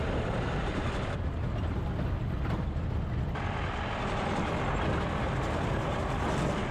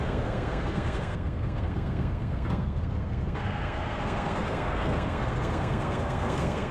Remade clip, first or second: second